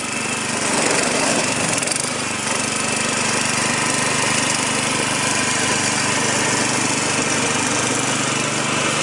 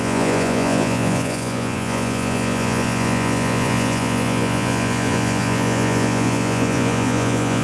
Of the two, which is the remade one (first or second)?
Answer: second